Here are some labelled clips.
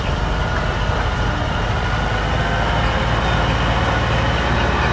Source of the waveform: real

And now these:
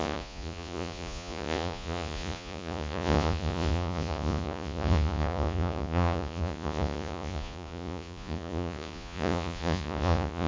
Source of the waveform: fake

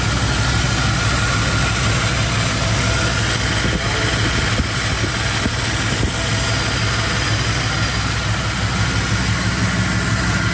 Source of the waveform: real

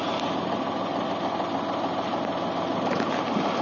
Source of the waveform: real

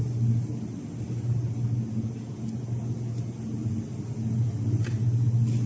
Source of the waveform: real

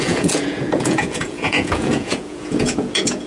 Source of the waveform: fake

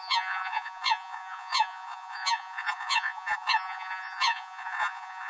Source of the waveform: fake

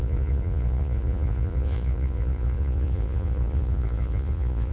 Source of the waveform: fake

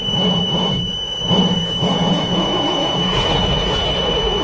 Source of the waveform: fake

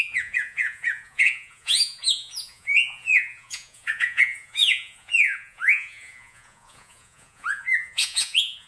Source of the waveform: fake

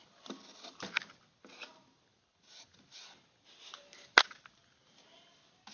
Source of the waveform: real